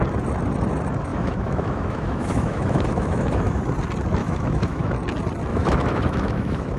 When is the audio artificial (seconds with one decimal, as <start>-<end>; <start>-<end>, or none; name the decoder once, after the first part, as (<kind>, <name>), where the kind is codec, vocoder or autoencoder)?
1.1-3.6 (autoencoder, DAC-VAE); 4.2-4.9; 5.5-6.8